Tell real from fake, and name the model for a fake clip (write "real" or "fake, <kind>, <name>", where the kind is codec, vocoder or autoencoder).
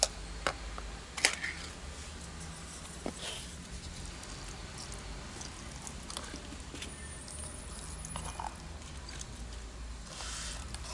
real